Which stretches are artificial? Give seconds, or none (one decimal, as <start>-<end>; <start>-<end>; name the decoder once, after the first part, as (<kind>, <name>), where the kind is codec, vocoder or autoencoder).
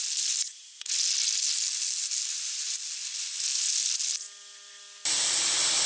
none